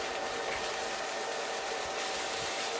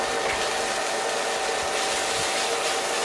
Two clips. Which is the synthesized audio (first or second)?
first